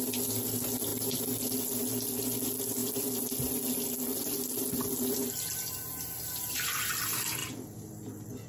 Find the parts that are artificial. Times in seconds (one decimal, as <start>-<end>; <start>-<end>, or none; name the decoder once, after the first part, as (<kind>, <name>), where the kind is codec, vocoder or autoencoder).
none